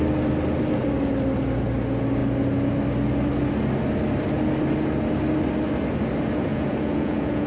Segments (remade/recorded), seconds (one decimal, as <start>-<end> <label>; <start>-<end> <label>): 0.0-6.5 recorded; 6.5-7.5 remade

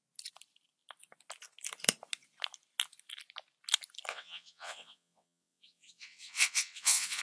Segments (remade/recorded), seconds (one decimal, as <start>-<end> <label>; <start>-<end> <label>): 0.0-4.1 recorded; 4.1-7.2 remade

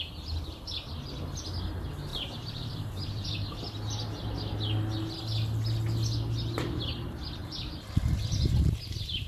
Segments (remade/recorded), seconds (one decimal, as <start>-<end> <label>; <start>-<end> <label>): 0.0-2.1 recorded; 2.1-3.6 remade; 3.6-9.3 recorded

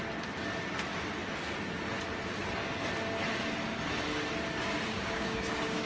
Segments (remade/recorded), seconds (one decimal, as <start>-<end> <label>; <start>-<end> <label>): 0.0-4.9 recorded; 4.9-5.9 remade

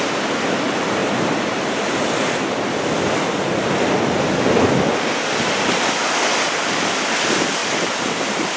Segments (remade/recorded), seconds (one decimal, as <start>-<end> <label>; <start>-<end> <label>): 0.0-7.6 recorded; 7.6-8.6 remade